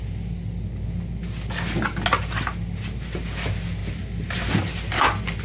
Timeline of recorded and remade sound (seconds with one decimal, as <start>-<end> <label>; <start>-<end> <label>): 0.0-5.4 recorded